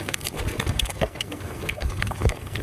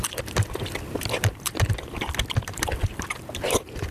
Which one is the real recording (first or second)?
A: second